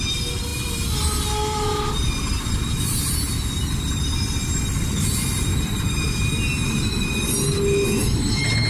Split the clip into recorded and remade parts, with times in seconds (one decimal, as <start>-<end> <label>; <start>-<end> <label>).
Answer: 0.0-8.7 recorded